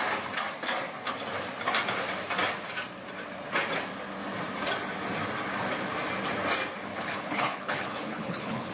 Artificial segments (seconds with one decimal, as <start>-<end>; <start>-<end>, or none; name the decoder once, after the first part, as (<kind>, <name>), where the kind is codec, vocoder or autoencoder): 6.9-8.7 (codec, HILCodec)